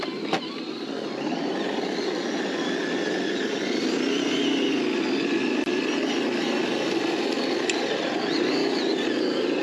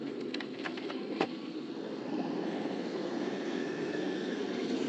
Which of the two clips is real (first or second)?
first